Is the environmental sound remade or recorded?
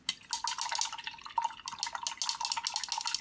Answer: recorded